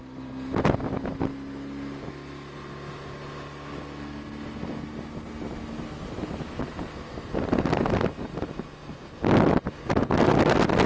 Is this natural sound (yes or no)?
yes